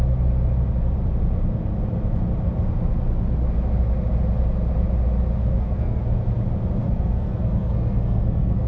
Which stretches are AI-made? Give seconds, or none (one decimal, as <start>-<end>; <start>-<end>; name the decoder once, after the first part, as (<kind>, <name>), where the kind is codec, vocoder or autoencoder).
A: 5.4-6.0 (codec, SNAC); 6.8-8.7